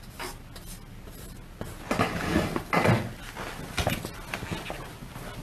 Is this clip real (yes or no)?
yes